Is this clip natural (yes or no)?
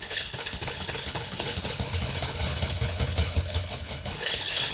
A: no